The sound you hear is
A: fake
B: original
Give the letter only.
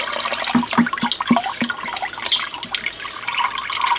B